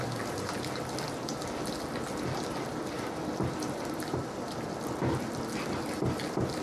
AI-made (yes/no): no